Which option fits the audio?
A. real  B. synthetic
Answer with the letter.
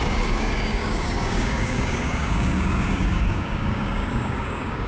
B